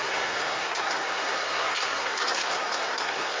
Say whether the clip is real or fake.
fake